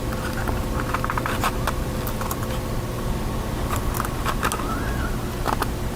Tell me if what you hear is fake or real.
real